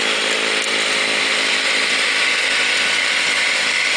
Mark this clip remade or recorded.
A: recorded